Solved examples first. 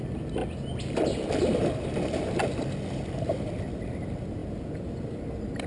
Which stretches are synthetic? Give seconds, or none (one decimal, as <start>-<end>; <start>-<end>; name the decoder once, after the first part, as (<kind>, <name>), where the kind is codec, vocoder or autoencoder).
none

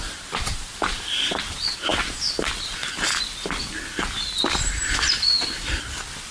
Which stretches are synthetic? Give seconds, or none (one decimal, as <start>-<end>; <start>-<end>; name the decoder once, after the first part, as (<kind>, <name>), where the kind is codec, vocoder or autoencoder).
none

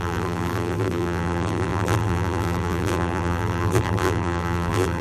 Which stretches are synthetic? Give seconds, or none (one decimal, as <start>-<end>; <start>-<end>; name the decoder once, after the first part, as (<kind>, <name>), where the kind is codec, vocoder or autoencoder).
0.0-5.0 (vocoder, BigVGAN v2)

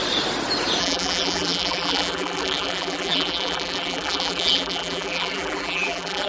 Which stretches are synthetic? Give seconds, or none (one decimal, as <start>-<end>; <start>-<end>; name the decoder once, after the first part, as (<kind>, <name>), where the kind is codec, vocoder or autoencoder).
0.8-6.3 (vocoder, BigVGAN v2)

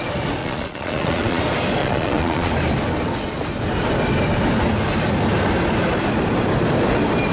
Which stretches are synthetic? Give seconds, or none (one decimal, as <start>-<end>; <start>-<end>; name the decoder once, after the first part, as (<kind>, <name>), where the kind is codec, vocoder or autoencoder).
0.4-1.4 (vocoder, Vocos); 1.8-2.5

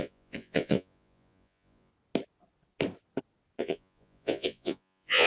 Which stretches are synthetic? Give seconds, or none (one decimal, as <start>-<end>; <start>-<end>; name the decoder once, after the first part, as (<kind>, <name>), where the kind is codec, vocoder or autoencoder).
0.0-1.9 (vocoder, Vocos); 3.6-5.3